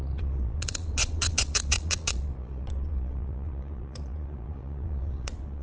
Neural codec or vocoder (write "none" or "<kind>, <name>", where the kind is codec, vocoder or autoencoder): vocoder, Vocos